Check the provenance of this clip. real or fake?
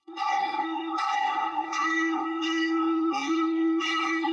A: fake